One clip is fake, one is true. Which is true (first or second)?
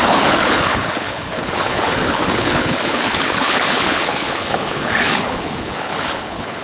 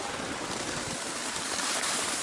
second